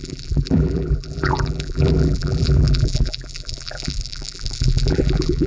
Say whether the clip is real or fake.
fake